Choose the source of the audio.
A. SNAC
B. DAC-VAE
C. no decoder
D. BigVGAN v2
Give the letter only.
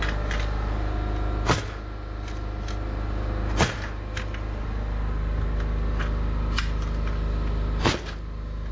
C